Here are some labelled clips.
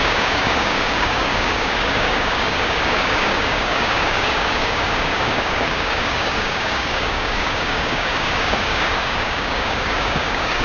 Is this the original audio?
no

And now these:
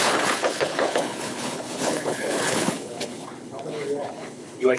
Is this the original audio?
no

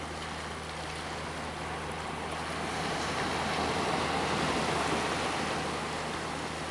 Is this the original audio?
yes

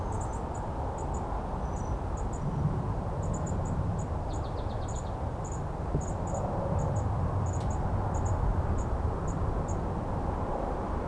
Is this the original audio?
yes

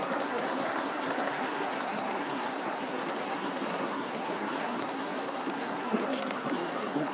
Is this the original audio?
no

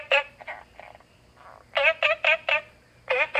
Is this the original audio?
yes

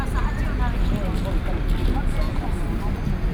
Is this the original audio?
yes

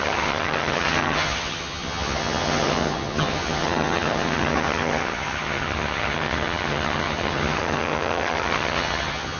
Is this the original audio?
no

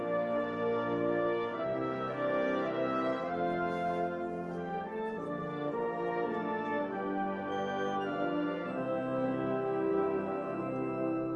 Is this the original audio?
yes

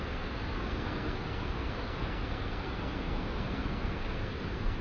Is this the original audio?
no